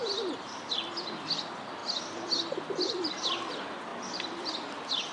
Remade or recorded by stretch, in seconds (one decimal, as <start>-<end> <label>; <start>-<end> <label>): 0.0-5.1 recorded

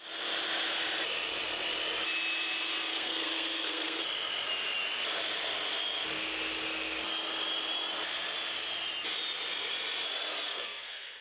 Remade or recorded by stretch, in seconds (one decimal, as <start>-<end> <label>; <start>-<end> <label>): 0.0-2.9 recorded; 2.9-4.0 remade; 4.0-10.5 recorded; 10.5-11.2 remade

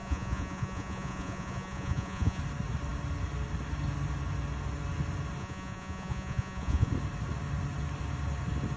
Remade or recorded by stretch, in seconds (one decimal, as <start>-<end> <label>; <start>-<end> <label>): 0.0-2.4 remade; 2.4-5.4 recorded; 5.4-6.9 remade; 6.9-8.8 recorded

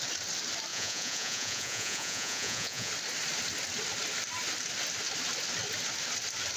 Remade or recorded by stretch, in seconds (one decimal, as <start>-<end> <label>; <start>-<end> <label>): 0.0-0.7 recorded; 0.7-2.9 remade; 2.9-6.6 recorded

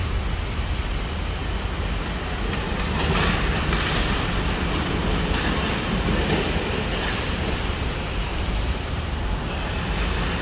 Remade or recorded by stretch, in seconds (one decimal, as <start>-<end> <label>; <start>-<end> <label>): 0.0-8.3 recorded; 8.3-9.2 remade; 9.2-10.4 recorded